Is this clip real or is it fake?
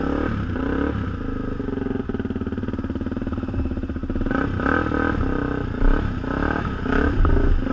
real